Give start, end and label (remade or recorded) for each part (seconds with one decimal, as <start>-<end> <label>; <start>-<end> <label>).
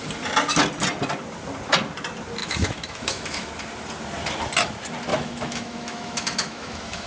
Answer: 0.0-2.4 recorded; 2.4-3.5 remade; 3.5-5.1 recorded; 5.1-7.1 remade